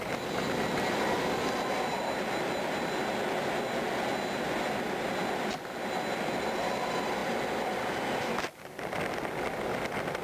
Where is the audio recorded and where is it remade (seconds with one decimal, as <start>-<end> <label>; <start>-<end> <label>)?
0.0-10.2 recorded